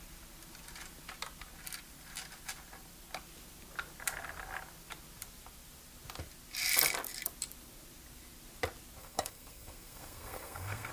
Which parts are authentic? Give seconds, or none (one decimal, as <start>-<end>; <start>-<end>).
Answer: 0.0-9.0